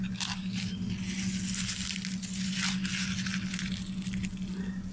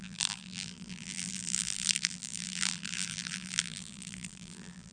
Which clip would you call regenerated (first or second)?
second